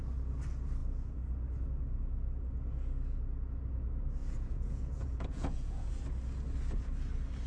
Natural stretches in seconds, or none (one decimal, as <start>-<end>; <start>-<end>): 0.0-4.2; 5.9-7.5